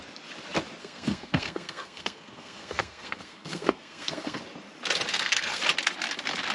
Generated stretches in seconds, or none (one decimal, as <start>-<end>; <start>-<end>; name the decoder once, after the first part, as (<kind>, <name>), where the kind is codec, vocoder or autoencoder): 0.8-4.4 (codec, SNAC); 5.1-5.6